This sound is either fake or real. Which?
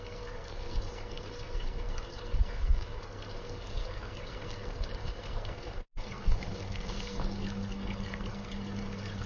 fake